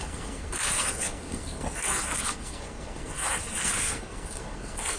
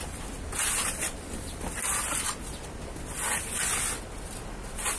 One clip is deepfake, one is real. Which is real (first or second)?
second